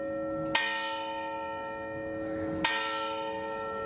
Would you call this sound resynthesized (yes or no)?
no